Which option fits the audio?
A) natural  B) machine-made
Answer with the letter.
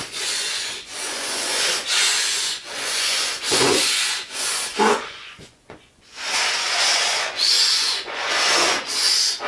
B